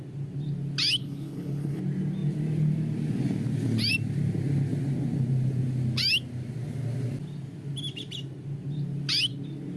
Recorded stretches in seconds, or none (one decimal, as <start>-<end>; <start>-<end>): 0.0-1.0; 1.8-9.8